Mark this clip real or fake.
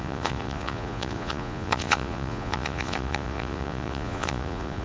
fake